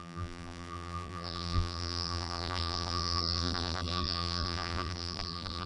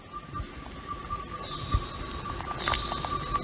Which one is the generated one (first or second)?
first